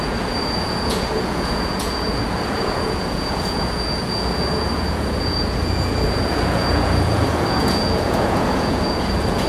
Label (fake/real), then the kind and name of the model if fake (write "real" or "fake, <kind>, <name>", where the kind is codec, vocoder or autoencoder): fake, vocoder, Vocos